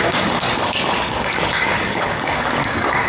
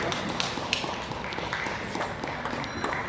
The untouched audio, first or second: second